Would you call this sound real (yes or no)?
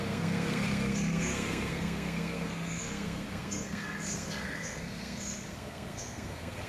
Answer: no